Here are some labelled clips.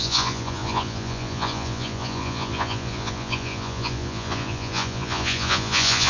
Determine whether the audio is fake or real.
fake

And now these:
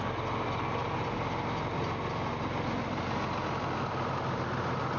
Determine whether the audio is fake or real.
real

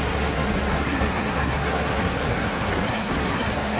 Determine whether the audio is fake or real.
fake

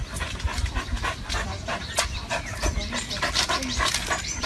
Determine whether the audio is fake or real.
real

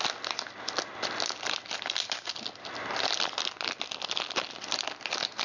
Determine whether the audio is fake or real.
real